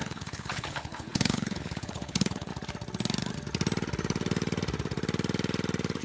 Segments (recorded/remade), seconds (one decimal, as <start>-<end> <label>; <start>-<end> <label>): 0.0-2.5 remade; 2.5-6.0 recorded